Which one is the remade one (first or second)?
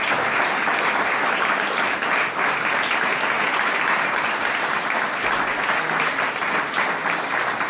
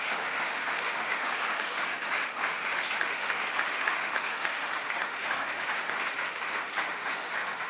second